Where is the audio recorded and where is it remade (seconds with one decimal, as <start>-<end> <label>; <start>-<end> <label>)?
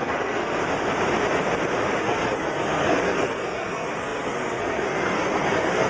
0.0-0.6 remade; 0.6-2.0 recorded; 2.0-5.9 remade